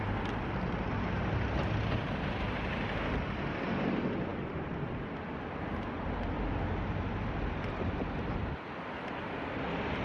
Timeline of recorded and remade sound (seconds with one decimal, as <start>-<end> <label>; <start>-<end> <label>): 0.0-10.0 recorded